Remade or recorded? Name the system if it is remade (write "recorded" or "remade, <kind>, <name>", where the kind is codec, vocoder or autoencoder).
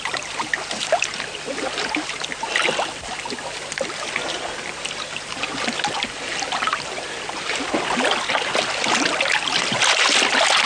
recorded